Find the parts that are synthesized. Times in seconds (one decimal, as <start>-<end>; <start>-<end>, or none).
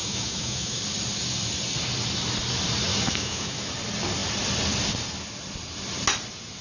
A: 0.0-0.8; 2.9-3.7